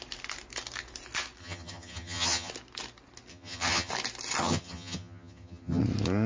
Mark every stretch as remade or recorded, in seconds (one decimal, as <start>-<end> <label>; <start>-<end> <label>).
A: 0.0-1.4 recorded; 1.4-2.5 remade; 2.5-3.3 recorded; 3.3-3.9 remade; 3.9-4.4 recorded; 4.4-5.8 remade; 5.8-6.3 recorded